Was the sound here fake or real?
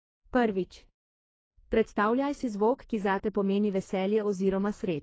fake